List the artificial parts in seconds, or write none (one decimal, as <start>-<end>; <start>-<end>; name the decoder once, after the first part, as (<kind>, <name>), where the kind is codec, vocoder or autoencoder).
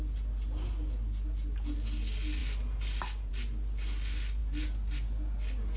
none